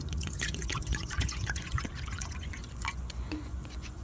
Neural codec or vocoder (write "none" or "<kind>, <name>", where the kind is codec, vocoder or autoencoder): vocoder, Vocos